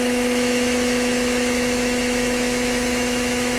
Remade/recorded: remade